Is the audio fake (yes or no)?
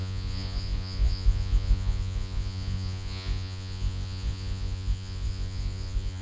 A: yes